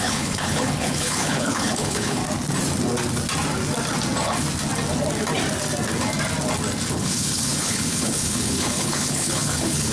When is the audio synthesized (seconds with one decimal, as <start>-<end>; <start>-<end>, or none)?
0.0-2.2; 6.9-9.9